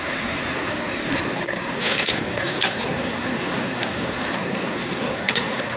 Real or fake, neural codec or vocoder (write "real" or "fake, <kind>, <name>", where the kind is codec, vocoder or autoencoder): fake, codec, SNAC